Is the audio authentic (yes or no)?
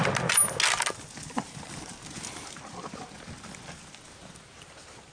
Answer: yes